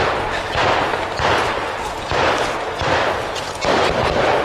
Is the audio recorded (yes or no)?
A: yes